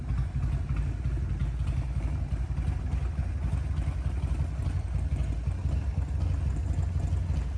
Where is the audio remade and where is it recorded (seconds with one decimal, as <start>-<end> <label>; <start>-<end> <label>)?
0.0-7.6 recorded

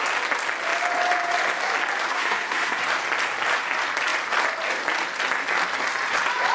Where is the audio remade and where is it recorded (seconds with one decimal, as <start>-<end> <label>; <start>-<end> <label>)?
0.0-2.1 recorded; 2.1-2.8 remade; 2.8-6.5 recorded

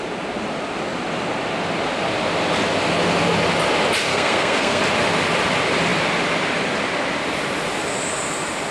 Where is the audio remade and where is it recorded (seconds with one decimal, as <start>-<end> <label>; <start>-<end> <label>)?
0.0-4.1 recorded; 4.1-4.8 remade; 4.8-8.7 recorded